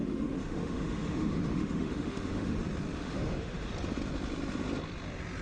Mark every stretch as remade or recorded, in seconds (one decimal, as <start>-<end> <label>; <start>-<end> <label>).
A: 0.0-2.6 remade; 2.6-3.0 recorded; 3.0-3.7 remade; 3.7-5.4 recorded